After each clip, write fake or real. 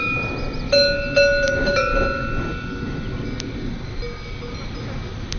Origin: real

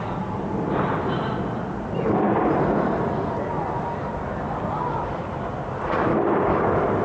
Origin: real